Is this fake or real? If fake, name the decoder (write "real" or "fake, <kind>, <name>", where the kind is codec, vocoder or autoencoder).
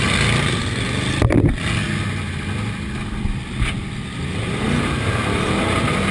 fake, vocoder, BigVGAN v2